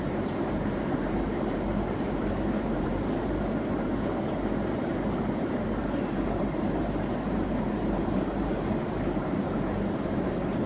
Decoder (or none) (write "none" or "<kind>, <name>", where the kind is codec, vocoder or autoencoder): vocoder, BigVGAN v2